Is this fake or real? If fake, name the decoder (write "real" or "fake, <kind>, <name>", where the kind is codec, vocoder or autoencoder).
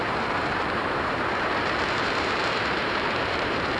fake, vocoder, BigVGAN v2